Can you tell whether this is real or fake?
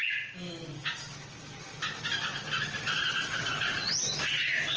real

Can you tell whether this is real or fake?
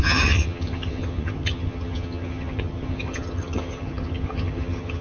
fake